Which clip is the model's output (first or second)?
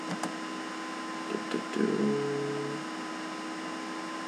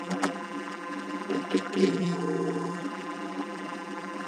second